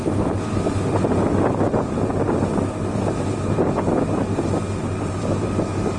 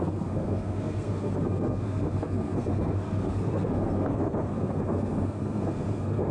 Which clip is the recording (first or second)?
first